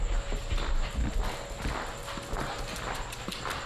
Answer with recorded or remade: recorded